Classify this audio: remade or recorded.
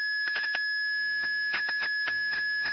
remade